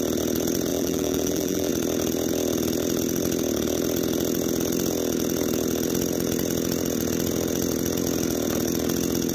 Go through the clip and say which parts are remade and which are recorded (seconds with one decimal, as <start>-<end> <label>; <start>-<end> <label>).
0.0-0.7 recorded; 0.7-1.7 remade; 1.7-9.3 recorded

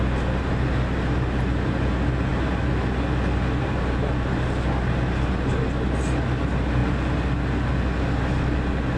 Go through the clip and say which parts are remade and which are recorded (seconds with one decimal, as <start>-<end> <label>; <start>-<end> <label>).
0.0-9.0 recorded

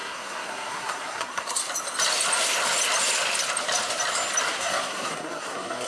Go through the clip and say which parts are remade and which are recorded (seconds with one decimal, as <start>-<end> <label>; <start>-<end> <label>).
0.0-1.6 remade; 1.6-4.5 recorded; 4.5-5.9 remade

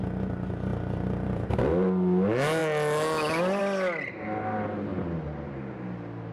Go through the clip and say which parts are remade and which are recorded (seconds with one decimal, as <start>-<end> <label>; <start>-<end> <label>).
0.0-0.7 recorded; 0.7-1.6 remade; 1.6-6.3 recorded

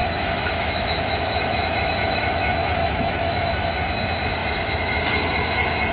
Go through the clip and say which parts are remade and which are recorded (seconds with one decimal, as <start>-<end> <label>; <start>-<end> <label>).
0.0-3.5 remade; 3.5-5.9 recorded

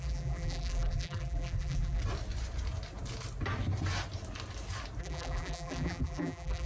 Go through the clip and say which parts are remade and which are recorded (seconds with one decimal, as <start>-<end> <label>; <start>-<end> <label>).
0.0-2.0 remade; 2.0-5.0 recorded; 5.0-6.7 remade

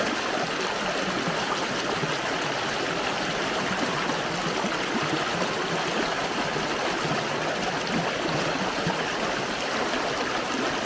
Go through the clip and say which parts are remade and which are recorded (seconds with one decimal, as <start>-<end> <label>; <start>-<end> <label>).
0.0-10.9 recorded